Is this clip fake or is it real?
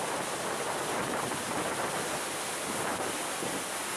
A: real